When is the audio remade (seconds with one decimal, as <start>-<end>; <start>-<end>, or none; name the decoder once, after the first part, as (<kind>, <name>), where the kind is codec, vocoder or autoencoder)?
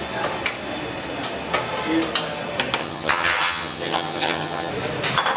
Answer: 2.8-4.7 (vocoder, HiFi-GAN)